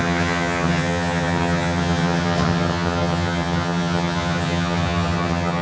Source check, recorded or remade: remade